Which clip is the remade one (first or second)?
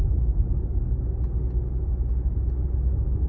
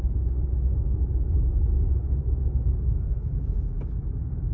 second